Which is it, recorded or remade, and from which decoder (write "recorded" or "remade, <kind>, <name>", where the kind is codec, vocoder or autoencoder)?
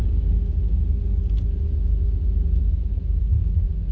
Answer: recorded